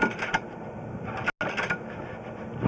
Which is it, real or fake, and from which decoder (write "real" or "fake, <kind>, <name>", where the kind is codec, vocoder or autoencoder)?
real